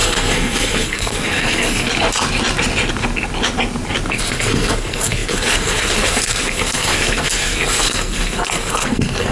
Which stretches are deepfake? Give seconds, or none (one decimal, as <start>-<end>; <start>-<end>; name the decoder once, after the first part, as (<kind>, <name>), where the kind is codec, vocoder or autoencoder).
0.0-1.9 (codec, SNAC); 4.1-9.3